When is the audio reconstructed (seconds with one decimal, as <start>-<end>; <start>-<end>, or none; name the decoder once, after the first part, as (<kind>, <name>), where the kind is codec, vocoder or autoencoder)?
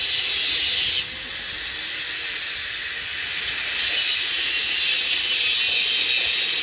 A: none